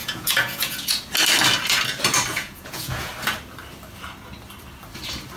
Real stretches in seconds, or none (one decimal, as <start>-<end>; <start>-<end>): 1.0-2.3; 3.1-5.4